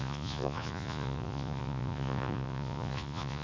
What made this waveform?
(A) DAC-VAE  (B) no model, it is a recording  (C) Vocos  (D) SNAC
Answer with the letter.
C